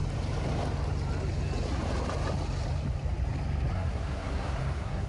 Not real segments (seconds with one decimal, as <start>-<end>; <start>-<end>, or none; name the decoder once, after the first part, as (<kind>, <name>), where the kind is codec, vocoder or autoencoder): 3.7-5.1 (codec, SNAC)